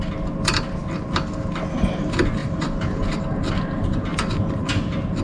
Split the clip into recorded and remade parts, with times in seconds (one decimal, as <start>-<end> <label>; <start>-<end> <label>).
0.0-2.4 recorded; 2.4-3.2 remade; 3.2-5.2 recorded